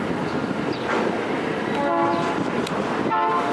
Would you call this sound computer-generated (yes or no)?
no